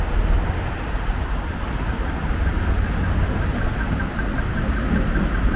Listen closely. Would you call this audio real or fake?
real